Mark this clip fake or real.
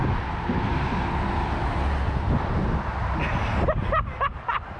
real